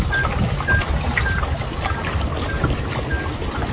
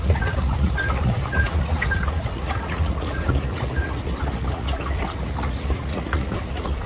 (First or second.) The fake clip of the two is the second